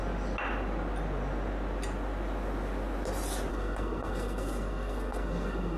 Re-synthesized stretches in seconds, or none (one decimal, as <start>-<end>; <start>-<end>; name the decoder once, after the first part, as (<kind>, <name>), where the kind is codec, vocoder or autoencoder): 3.5-5.8 (codec, SNAC)